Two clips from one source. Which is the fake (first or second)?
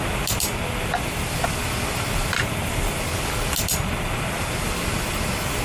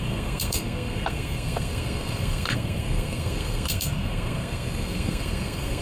second